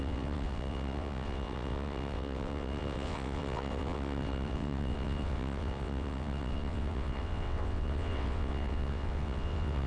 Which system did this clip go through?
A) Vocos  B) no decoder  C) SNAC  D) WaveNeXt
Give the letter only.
D